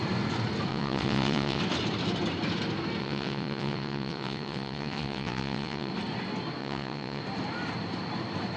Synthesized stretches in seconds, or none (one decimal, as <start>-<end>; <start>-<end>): 0.7-1.6; 3.0-5.9; 6.6-7.2